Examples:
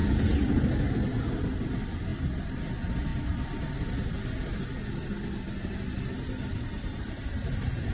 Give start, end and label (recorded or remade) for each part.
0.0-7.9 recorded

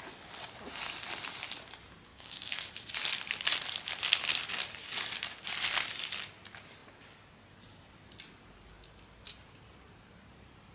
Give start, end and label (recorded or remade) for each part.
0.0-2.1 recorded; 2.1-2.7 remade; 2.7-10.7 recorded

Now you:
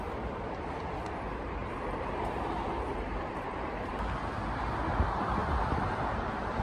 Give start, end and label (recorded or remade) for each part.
0.0-1.6 recorded; 1.6-3.9 remade; 3.9-5.4 recorded; 5.4-6.6 remade

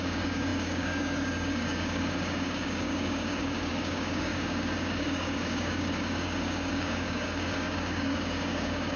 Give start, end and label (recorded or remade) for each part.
0.0-9.0 remade